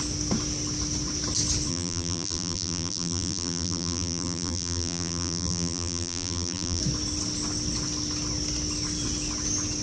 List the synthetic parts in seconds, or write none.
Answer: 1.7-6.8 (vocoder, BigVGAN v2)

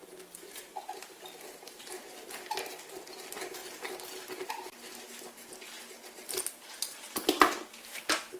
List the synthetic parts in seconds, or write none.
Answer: none

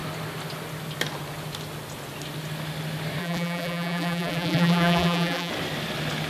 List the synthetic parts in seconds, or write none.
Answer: 3.2-5.5 (vocoder, BigVGAN v2)

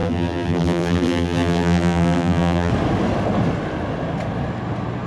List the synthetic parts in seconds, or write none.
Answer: 0.0-2.7 (vocoder, BigVGAN v2)

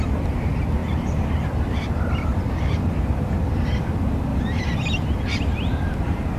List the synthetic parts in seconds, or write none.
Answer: 2.3-3.0 (vocoder, BigVGAN v2); 4.3-5.0